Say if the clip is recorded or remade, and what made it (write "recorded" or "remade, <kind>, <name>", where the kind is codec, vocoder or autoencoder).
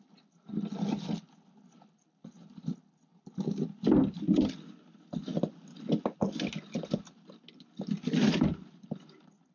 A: recorded